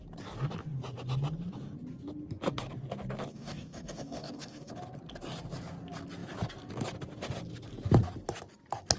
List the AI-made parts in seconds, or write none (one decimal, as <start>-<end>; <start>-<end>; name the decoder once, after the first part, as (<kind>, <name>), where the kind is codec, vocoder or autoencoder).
3.3-4.7 (codec, DAC)

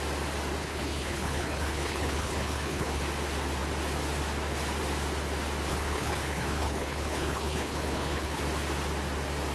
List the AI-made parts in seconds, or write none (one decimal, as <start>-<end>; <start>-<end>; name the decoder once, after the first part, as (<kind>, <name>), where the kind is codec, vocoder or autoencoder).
0.6-3.0 (codec, HILCodec); 5.7-8.4

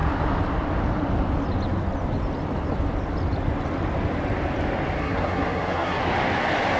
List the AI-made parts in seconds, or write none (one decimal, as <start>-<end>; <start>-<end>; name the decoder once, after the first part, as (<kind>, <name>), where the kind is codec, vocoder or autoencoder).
5.0-6.0 (codec, SNAC)

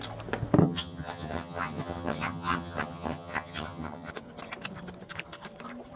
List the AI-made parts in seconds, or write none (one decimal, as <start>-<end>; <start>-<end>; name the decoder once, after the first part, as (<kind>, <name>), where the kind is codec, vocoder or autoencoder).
0.6-4.1 (vocoder, HiFi-GAN)

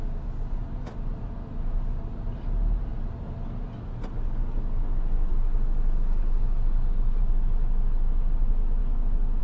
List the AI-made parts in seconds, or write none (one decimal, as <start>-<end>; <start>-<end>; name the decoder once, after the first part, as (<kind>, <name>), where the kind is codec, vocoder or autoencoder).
none

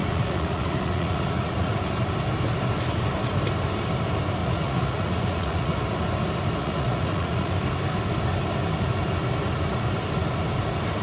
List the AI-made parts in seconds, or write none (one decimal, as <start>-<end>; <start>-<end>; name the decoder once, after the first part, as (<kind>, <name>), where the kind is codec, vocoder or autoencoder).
0.0-1.9 (vocoder, Vocos); 4.4-5.8; 6.6-7.5

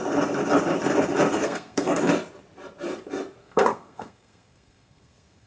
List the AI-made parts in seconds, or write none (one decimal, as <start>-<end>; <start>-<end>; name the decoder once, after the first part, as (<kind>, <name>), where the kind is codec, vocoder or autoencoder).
1.4-2.0 (codec, SNAC); 3.4-5.5

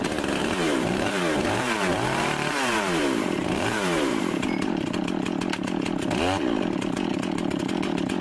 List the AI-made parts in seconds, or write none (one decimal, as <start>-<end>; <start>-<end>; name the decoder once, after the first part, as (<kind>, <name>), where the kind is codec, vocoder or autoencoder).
0.4-5.0 (vocoder, BigVGAN v2); 7.1-8.2